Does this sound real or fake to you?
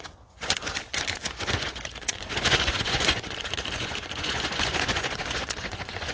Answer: fake